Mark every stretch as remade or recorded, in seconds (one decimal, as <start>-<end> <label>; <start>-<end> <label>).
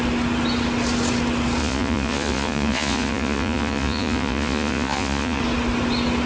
0.0-1.6 recorded; 1.6-5.4 remade; 5.4-6.3 recorded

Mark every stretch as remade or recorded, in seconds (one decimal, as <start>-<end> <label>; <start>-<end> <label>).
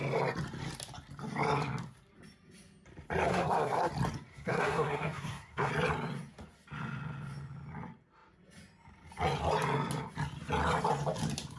0.0-3.3 recorded; 3.3-3.9 remade; 3.9-4.3 recorded; 4.3-5.7 remade; 5.7-11.6 recorded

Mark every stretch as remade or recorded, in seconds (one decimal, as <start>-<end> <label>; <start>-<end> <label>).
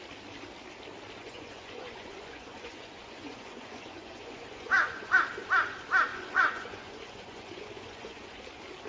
0.0-1.2 recorded; 1.2-5.2 remade; 5.2-6.1 recorded; 6.1-8.4 remade; 8.4-8.9 recorded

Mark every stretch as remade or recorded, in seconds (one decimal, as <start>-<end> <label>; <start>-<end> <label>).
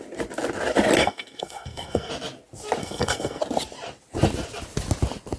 0.0-1.0 recorded; 1.0-2.1 remade; 2.1-2.8 recorded; 2.8-3.4 remade; 3.4-5.4 recorded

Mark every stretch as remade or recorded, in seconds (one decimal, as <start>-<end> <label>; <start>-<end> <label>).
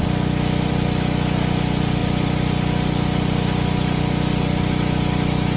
0.0-5.6 recorded